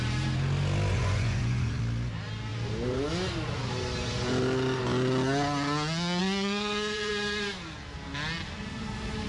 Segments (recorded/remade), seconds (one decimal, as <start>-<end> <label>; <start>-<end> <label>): 0.0-0.9 recorded; 0.9-1.8 remade; 1.8-6.2 recorded; 6.2-7.1 remade; 7.1-9.3 recorded